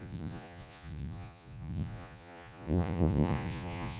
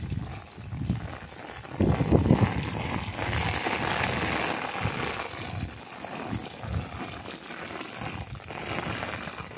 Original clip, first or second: second